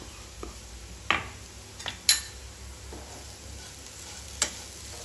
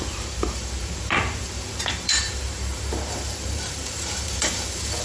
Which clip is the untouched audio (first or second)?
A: first